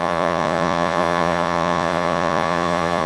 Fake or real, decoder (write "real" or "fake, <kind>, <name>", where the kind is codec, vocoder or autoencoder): fake, vocoder, Vocos